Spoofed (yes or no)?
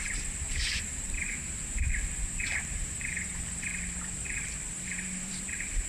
yes